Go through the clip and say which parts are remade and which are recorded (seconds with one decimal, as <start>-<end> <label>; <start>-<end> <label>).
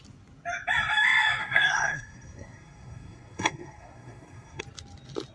0.0-1.4 recorded; 1.4-4.6 remade; 4.6-5.3 recorded